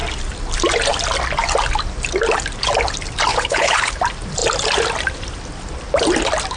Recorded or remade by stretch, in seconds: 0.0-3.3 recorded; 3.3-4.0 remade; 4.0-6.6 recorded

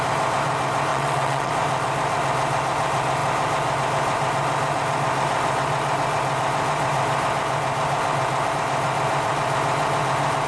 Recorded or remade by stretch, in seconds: 0.0-0.9 recorded; 0.9-1.5 remade; 1.5-10.5 recorded

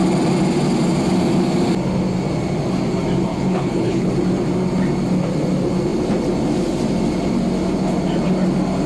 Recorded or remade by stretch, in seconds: 0.0-3.3 recorded; 3.3-4.1 remade; 4.1-8.9 recorded

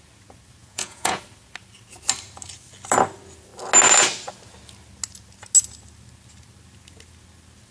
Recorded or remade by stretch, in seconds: 0.0-0.6 recorded; 0.6-1.2 remade; 1.2-7.7 recorded

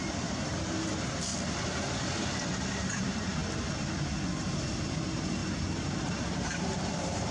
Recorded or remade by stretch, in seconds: 0.0-1.3 remade; 1.3-1.9 recorded; 1.9-3.4 remade; 3.4-5.0 recorded; 5.0-5.4 remade; 5.4-6.0 recorded; 6.0-7.3 remade

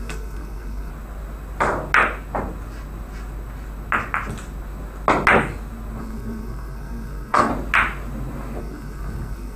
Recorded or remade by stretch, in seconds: 0.0-0.9 remade; 0.9-6.0 recorded; 6.0-7.5 remade; 7.5-8.6 recorded; 8.6-9.6 remade

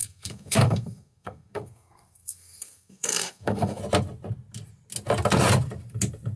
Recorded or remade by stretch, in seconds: 0.0-3.8 remade; 3.8-6.4 recorded

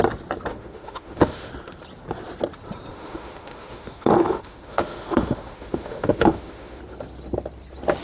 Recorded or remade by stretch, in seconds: 0.0-0.5 recorded; 0.5-1.5 remade; 1.5-2.9 recorded; 2.9-6.8 remade; 6.8-8.0 recorded